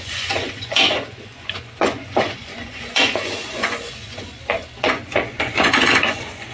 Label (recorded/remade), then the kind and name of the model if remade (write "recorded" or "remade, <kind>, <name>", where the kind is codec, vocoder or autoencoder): remade, vocoder, Vocos